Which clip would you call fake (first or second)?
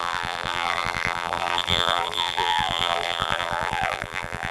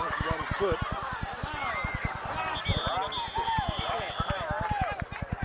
first